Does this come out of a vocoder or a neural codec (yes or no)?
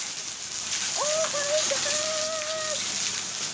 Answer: no